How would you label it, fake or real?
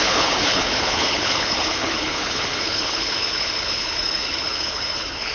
fake